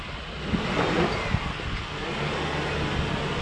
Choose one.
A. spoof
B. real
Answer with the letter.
B